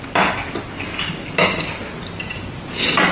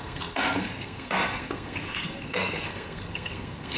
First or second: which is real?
first